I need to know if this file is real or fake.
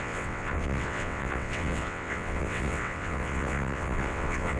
fake